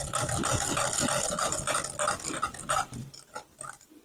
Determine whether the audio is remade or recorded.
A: recorded